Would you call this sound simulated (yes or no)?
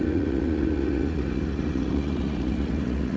yes